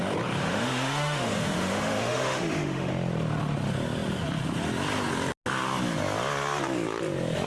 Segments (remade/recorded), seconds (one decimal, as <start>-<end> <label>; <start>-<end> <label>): 0.0-0.4 recorded; 0.4-2.9 remade; 2.9-7.5 recorded